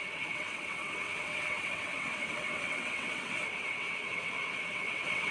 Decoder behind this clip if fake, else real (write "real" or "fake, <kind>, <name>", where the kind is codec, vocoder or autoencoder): fake, vocoder, WaveNeXt